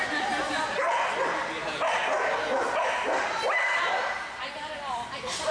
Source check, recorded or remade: remade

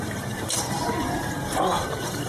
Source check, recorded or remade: remade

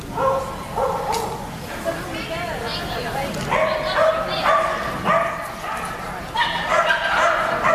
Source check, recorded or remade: recorded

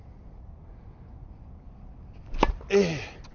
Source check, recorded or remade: recorded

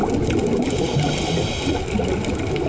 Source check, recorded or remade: recorded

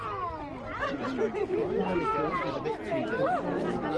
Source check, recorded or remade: recorded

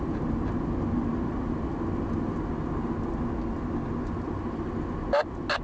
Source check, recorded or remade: recorded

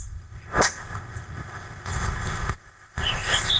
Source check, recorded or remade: remade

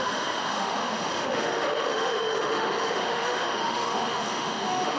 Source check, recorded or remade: remade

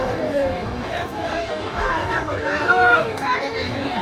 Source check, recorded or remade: remade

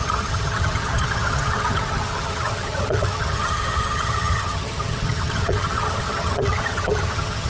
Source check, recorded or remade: remade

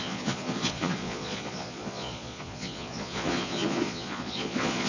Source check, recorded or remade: remade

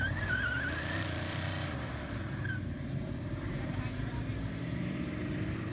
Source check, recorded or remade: remade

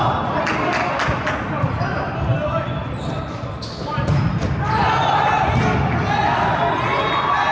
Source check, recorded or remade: recorded